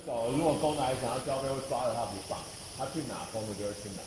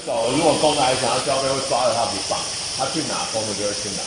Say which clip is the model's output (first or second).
second